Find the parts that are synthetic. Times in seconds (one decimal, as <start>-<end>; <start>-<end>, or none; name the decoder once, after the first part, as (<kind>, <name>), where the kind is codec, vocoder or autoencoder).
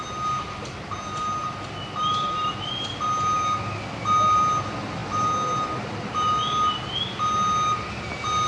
none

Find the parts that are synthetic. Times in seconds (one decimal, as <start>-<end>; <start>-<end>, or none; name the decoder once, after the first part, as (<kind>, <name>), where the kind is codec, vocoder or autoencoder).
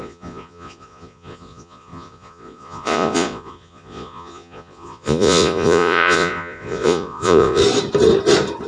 0.0-7.6 (vocoder, Vocos)